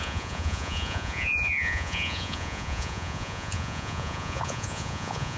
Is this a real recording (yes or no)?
no